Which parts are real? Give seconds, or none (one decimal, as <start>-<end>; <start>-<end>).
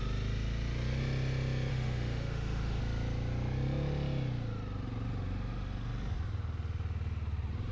0.0-1.7; 2.8-7.7